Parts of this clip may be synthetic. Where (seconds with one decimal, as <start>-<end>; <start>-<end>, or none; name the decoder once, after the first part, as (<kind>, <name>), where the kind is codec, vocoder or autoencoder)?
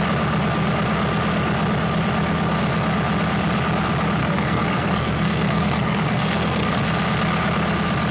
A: 4.2-6.8 (codec, SNAC)